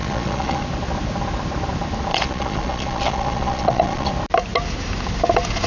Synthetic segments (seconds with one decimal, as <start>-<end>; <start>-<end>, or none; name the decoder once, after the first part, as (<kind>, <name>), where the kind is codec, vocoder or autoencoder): 0.0-0.6 (vocoder, Vocos); 2.1-4.1